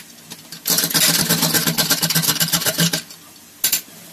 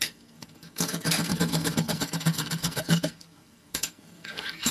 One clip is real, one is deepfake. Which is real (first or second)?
first